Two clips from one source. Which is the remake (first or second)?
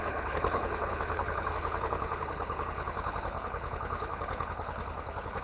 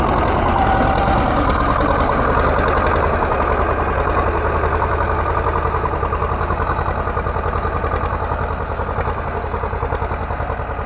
first